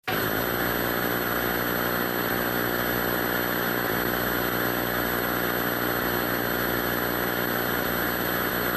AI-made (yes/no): no